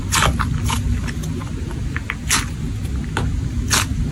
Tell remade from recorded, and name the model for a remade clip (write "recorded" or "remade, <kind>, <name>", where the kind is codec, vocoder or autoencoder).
recorded